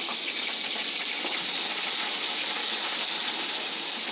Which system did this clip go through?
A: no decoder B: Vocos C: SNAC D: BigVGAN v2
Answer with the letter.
A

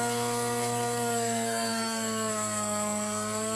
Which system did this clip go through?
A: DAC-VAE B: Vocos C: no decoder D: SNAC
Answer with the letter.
D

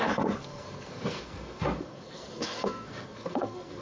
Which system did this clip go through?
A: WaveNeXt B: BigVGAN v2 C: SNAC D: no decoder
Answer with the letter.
C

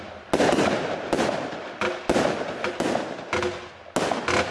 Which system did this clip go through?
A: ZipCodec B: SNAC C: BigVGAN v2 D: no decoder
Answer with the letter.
D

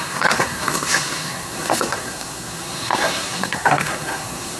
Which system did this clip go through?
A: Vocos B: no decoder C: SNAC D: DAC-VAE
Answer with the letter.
C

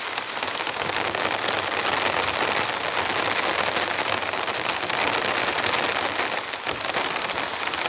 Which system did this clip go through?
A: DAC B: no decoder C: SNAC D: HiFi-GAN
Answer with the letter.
B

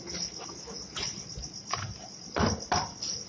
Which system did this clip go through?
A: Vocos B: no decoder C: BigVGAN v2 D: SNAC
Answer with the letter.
B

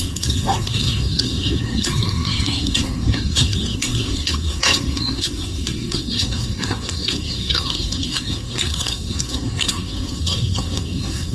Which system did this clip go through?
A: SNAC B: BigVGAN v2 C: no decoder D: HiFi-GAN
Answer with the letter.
A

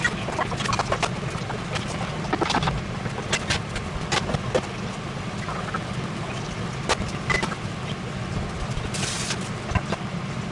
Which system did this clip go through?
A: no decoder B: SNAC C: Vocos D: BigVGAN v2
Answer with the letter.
A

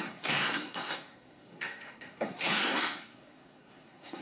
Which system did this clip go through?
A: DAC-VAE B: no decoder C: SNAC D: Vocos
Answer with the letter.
C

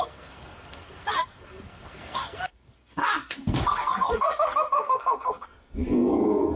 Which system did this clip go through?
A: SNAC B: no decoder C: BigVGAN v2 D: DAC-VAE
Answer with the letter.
A